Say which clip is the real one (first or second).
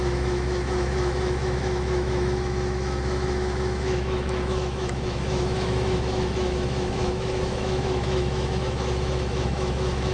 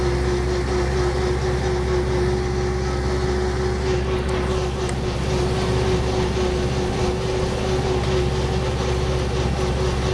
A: second